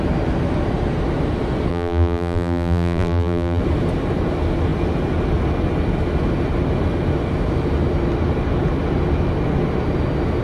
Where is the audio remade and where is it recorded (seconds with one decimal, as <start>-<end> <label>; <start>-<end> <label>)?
0.0-1.7 recorded; 1.7-3.6 remade; 3.6-10.4 recorded